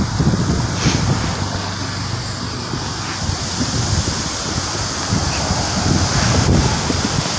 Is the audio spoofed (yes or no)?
no